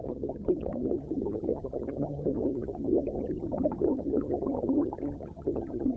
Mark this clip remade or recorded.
remade